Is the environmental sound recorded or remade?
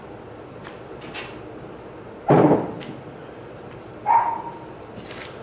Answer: recorded